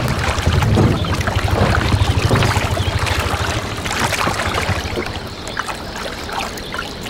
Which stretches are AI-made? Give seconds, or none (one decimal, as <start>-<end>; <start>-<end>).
none